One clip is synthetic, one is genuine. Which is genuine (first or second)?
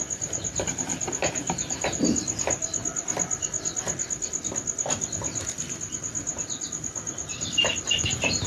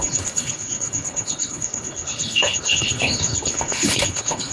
first